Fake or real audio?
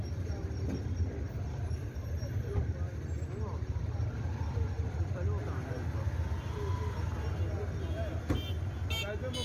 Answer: real